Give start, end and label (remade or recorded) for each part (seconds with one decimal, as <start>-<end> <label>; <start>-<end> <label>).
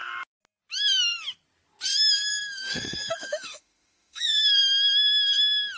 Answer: 0.0-2.3 recorded; 2.3-4.6 remade; 4.6-5.8 recorded